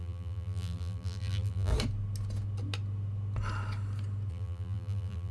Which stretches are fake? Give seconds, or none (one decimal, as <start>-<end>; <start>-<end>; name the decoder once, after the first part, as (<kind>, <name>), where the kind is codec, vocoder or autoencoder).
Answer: 0.0-1.7 (vocoder, BigVGAN v2); 4.3-5.3